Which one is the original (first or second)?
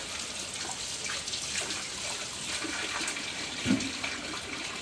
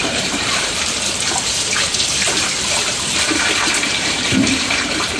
first